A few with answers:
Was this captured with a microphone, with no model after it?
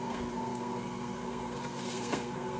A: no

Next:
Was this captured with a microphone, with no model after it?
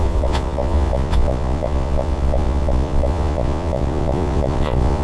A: no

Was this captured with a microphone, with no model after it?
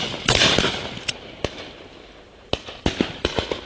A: yes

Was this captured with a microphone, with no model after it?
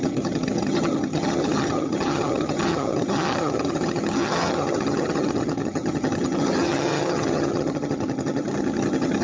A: no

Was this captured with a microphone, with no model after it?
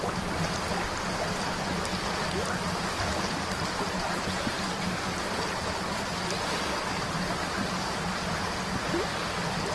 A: yes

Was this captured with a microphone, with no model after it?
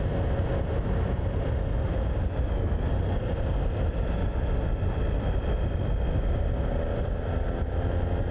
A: yes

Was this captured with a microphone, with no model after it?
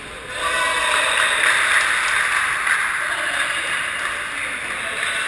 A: yes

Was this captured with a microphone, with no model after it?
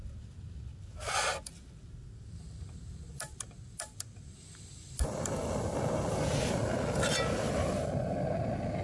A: yes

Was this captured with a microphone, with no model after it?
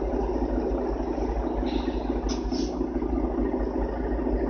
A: yes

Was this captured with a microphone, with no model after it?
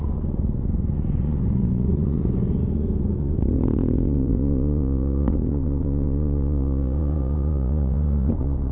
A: no